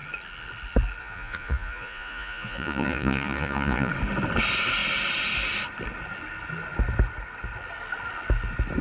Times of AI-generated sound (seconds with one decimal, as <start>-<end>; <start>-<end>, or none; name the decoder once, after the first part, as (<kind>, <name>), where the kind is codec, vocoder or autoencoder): 1.0-3.9 (vocoder, Vocos)